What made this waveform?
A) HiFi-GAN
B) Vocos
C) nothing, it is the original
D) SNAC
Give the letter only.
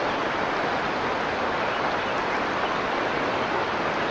C